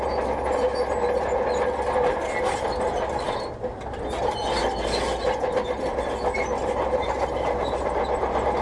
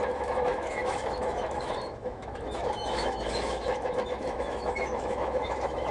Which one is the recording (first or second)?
first